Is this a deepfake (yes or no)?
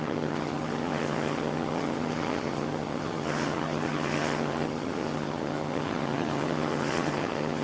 yes